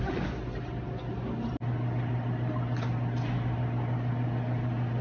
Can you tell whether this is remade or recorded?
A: recorded